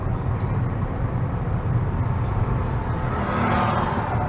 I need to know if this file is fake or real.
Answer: real